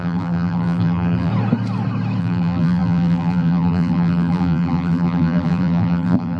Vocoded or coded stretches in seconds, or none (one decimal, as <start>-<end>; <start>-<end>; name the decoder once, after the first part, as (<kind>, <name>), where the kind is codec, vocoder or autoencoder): 0.0-1.3 (vocoder, BigVGAN v2); 2.2-6.4